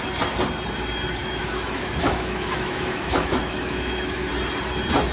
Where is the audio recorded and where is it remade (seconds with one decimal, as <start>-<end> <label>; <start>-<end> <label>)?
0.0-1.2 recorded; 1.2-4.3 remade; 4.3-5.1 recorded